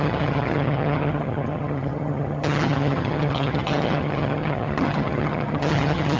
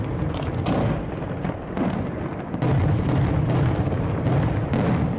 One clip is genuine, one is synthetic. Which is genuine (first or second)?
second